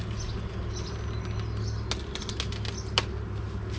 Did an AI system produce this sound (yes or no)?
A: no